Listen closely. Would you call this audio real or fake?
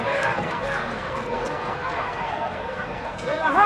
fake